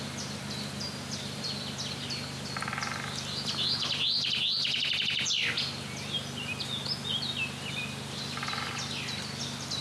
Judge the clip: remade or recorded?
recorded